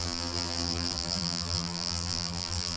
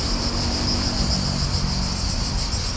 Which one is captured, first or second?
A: second